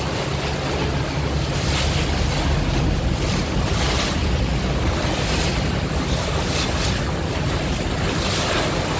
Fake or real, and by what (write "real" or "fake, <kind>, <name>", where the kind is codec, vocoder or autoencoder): real